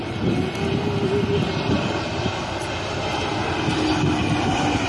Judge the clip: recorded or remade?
recorded